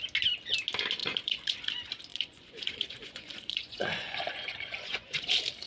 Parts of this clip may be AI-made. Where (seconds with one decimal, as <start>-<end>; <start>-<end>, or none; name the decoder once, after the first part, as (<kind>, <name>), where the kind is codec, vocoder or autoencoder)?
1.0-1.6 (vocoder, Vocos); 2.1-5.3